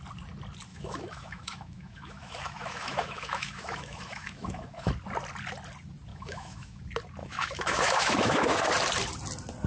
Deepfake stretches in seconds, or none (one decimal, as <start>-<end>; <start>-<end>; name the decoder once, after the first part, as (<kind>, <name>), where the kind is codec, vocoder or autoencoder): 0.7-4.9 (autoencoder, DAC-VAE); 6.1-6.8; 7.2-8.7